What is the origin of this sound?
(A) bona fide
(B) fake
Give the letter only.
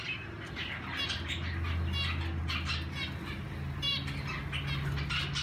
A